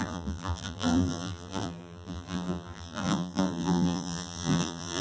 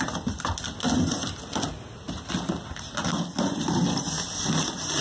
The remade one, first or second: first